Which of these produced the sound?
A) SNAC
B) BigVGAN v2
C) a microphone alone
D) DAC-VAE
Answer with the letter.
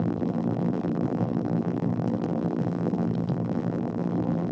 B